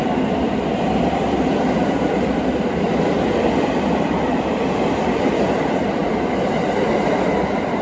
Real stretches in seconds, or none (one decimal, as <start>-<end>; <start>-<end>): 6.0-6.9